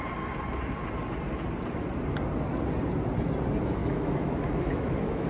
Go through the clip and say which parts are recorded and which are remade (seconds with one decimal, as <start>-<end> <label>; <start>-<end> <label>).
0.0-3.8 recorded; 3.8-5.3 remade